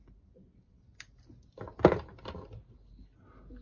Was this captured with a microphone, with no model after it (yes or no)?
yes